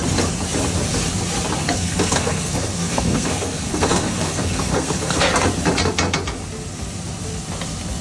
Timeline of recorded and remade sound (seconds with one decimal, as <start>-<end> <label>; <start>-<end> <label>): 0.0-1.6 recorded; 1.6-5.2 remade; 5.2-8.0 recorded